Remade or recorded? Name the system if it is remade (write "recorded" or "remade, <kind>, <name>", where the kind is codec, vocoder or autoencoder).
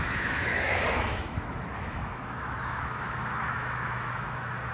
remade, autoencoder, DAC-VAE